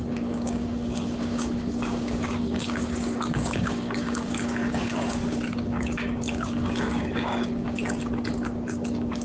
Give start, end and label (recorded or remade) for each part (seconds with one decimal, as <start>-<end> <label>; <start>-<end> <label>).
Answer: 0.0-7.8 remade; 7.8-8.4 recorded; 8.4-9.2 remade